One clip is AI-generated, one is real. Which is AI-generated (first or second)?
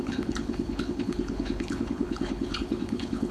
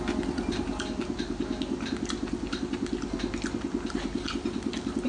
first